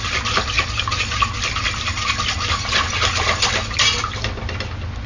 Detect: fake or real real